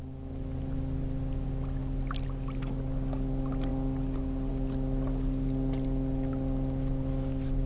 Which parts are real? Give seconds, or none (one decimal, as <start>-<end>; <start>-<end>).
0.0-7.7